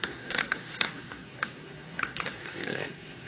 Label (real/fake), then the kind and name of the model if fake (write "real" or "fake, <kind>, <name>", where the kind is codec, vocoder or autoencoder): fake, codec, SNAC